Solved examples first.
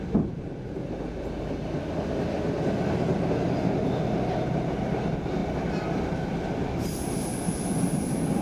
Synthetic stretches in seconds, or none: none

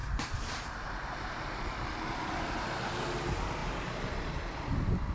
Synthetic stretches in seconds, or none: 0.0-3.0 (vocoder, BigVGAN v2); 3.6-4.4

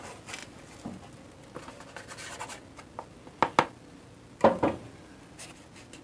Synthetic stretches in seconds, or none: none

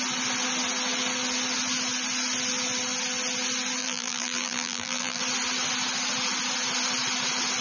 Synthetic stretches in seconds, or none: 3.8-5.2 (vocoder, BigVGAN v2)

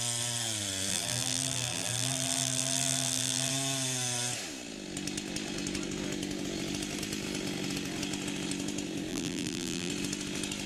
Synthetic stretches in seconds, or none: 0.9-3.5 (vocoder, BigVGAN v2); 9.1-9.9

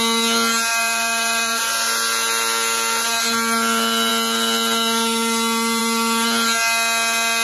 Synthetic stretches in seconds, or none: 0.7-1.6 (vocoder, BigVGAN v2)